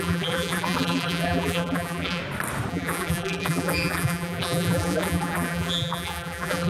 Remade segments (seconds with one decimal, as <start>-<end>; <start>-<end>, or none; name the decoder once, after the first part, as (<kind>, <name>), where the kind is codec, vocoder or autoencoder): 0.0-2.2 (vocoder, BigVGAN v2); 2.7-6.7